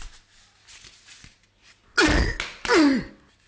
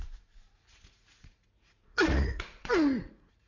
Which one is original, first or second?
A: first